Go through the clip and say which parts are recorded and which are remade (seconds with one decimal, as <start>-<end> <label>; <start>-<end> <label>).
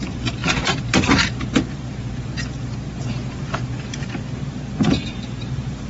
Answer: 0.0-5.9 remade